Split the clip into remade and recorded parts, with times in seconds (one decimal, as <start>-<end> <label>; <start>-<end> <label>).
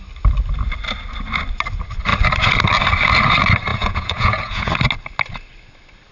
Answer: 0.0-3.7 recorded; 3.7-4.7 remade; 4.7-6.1 recorded